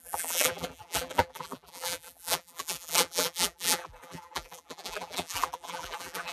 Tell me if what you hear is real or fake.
fake